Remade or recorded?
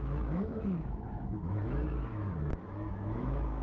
remade